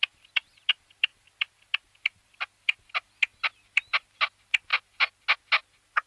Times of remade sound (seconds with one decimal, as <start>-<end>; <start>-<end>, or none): none